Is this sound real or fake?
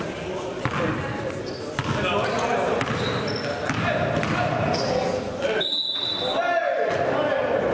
real